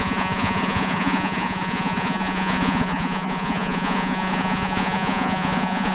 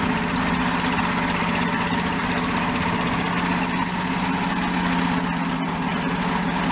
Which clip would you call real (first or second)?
second